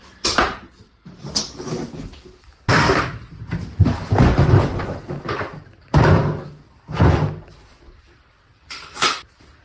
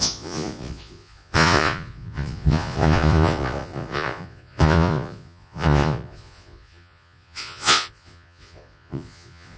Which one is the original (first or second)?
first